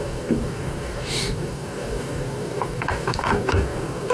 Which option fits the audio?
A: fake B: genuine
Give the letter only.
A